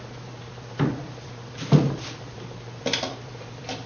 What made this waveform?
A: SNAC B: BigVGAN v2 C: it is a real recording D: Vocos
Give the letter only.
B